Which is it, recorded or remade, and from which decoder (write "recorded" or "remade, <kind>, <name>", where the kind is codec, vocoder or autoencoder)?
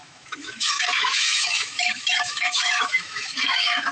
remade, autoencoder, DAC-VAE